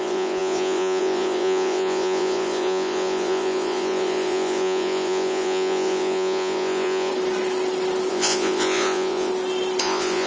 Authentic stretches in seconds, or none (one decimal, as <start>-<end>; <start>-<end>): 7.1-8.1; 9.3-9.8